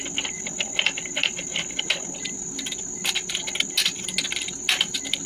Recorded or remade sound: recorded